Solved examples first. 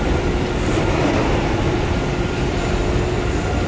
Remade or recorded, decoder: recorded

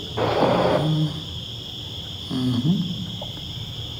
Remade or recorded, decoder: recorded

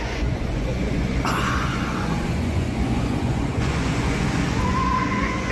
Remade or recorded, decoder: remade, vocoder, Vocos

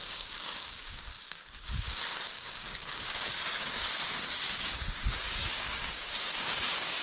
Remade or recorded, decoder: remade, codec, DAC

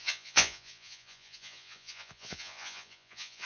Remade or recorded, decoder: remade, vocoder, Vocos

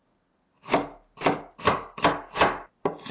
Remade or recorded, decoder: recorded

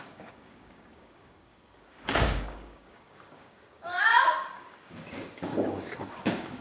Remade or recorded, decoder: remade, codec, DAC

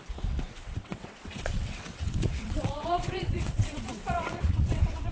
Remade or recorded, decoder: remade, vocoder, WaveNeXt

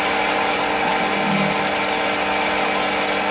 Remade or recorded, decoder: recorded